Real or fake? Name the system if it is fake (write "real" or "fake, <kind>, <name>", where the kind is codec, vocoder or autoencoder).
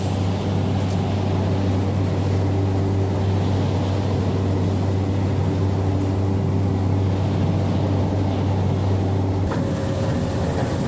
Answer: real